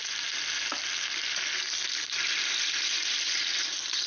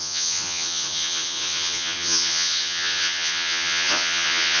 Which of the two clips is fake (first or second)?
second